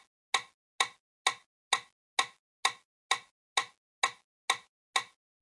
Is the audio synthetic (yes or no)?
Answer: no